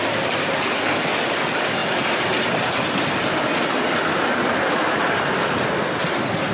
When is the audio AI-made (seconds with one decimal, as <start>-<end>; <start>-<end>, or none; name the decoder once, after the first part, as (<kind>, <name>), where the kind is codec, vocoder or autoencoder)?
0.0-6.5 (vocoder, BigVGAN v2)